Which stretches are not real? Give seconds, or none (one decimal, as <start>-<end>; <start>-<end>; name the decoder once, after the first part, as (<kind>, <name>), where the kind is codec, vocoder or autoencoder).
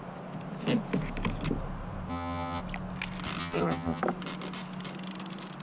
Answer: 2.1-2.6 (vocoder, HiFi-GAN); 3.4-4.0